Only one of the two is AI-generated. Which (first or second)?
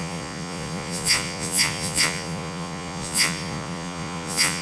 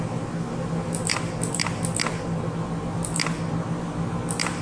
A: first